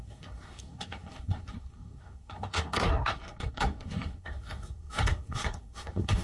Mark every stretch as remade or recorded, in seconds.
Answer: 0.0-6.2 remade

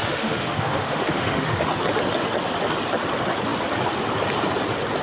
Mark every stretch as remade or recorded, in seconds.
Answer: 0.0-1.7 remade; 1.7-5.0 recorded

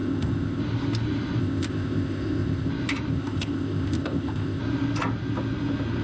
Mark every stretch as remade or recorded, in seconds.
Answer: 0.0-0.6 remade; 0.6-1.4 recorded; 1.4-2.7 remade; 2.7-3.1 recorded; 3.1-4.6 remade; 4.6-6.0 recorded

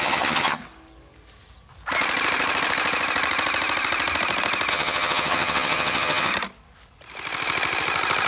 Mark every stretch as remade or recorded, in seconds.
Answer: 0.0-0.6 remade; 0.6-4.7 recorded; 4.7-6.3 remade; 6.3-8.3 recorded

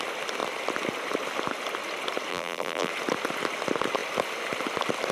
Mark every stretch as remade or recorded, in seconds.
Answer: 0.0-2.3 recorded; 2.3-2.9 remade; 2.9-5.1 recorded

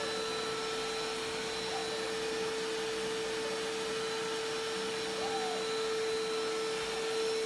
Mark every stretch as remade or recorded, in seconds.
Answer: 0.0-7.5 recorded

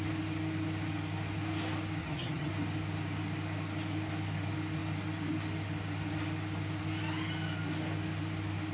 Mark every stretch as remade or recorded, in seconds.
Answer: 0.0-2.0 recorded; 2.0-2.5 remade; 2.5-8.7 recorded

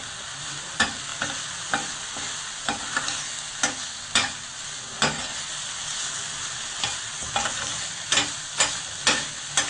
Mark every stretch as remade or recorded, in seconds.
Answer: 0.0-9.7 recorded